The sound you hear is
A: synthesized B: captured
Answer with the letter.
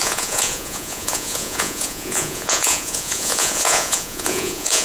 A